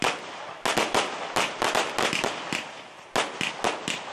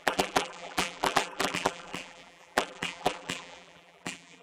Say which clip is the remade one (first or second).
second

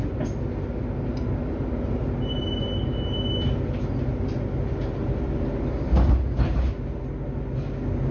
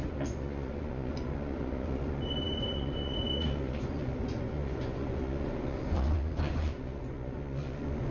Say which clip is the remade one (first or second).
second